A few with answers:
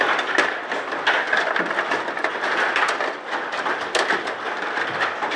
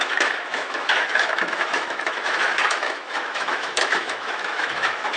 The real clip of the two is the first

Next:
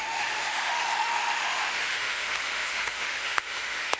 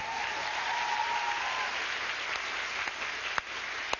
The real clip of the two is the second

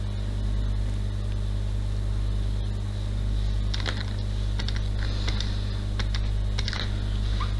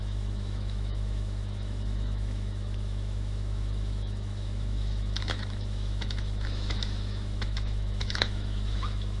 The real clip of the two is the first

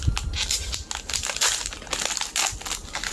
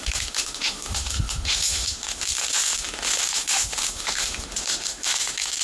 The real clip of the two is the first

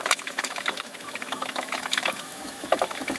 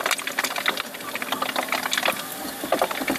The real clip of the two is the second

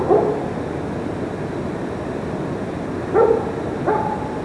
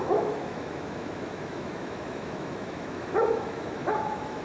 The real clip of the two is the first